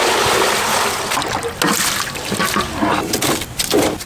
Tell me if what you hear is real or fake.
real